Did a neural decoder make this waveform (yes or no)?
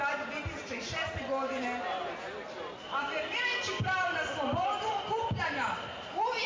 no